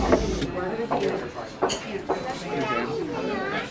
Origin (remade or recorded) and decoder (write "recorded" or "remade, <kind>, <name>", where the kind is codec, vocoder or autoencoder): recorded